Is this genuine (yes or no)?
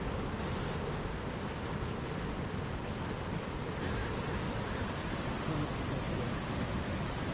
yes